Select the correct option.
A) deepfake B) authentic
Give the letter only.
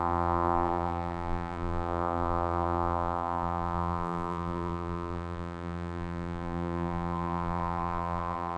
A